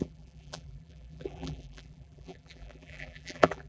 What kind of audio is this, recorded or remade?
remade